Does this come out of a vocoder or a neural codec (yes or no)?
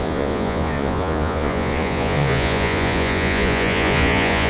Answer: yes